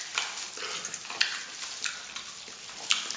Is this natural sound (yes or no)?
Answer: yes